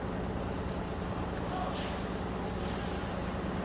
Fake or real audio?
real